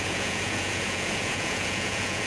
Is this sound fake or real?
fake